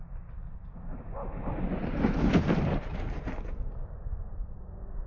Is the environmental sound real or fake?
real